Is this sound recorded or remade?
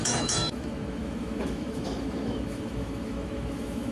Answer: remade